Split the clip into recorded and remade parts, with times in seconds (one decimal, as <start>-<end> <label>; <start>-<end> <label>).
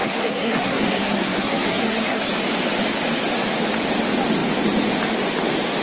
0.0-2.3 remade; 2.3-5.8 recorded